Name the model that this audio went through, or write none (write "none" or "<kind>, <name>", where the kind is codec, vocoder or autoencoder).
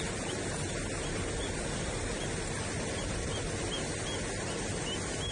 none